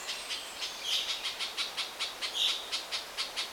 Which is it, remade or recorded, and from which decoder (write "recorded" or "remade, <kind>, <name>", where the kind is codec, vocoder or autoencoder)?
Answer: recorded